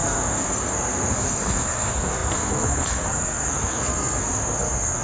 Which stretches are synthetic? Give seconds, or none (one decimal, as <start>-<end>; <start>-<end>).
0.0-5.0